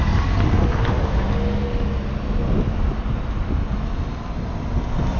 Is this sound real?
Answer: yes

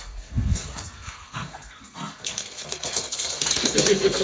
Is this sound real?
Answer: no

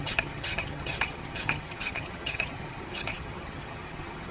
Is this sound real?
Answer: no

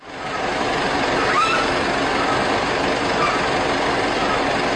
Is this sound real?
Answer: yes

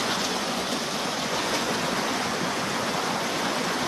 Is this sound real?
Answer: no